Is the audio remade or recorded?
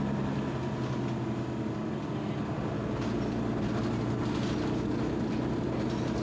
recorded